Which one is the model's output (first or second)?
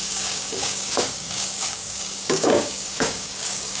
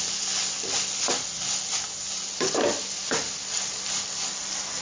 first